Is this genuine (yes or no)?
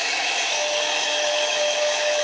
no